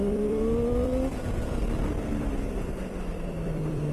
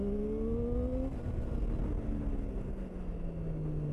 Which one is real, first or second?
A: second